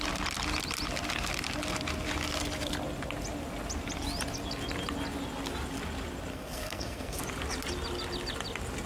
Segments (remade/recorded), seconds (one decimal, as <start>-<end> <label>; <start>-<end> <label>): 0.0-6.3 recorded; 6.3-7.2 remade; 7.2-8.9 recorded